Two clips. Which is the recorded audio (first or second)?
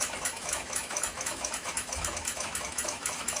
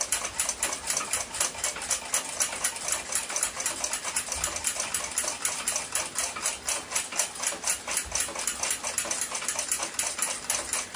second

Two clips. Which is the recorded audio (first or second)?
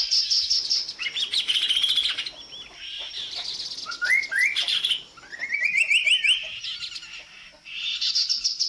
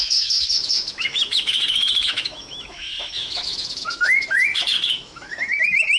first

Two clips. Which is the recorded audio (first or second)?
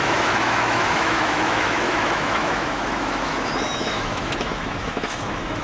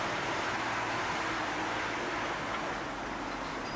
second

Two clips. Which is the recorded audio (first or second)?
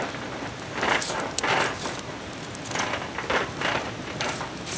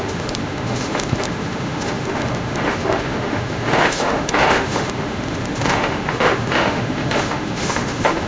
first